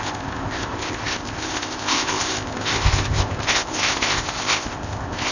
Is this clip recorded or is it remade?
remade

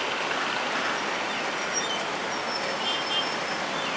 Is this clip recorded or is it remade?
recorded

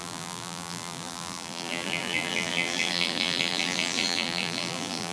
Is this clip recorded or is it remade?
remade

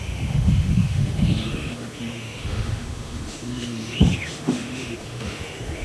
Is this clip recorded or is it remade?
remade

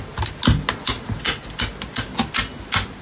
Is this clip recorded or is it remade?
recorded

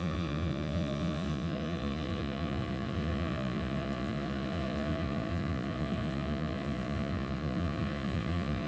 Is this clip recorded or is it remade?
remade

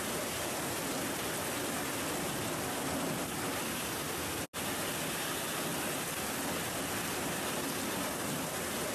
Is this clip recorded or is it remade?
recorded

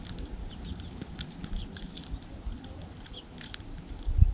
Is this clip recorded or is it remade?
recorded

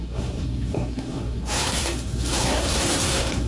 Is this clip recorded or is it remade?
remade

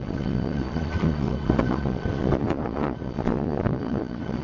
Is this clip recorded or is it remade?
remade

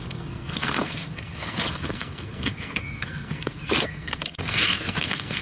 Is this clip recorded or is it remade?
remade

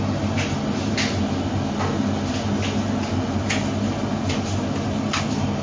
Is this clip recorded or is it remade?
recorded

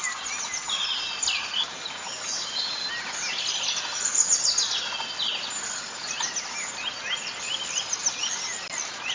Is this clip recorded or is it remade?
recorded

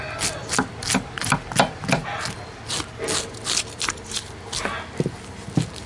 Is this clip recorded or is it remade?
recorded